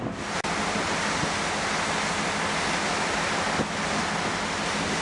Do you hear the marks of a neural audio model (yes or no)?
no